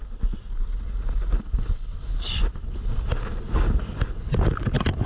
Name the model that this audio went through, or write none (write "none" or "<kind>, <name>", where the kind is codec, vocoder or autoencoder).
none